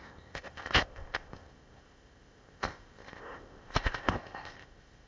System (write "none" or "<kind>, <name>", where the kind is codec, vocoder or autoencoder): codec, ZipCodec